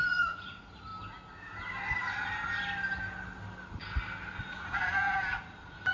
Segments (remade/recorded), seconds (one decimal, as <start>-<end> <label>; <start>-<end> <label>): 0.0-0.9 remade; 0.9-4.4 recorded; 4.4-5.9 remade